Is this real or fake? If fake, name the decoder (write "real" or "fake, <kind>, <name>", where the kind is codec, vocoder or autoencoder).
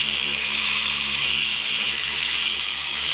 fake, autoencoder, DAC-VAE